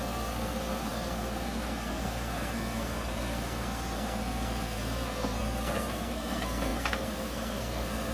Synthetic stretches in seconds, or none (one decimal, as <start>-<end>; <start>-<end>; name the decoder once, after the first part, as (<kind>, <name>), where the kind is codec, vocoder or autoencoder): 0.0-8.1 (codec, SNAC)